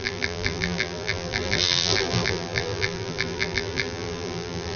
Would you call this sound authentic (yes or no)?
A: no